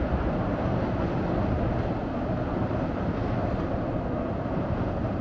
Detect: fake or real real